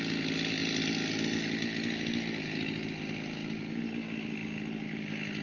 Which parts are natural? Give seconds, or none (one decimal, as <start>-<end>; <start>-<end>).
0.0-5.4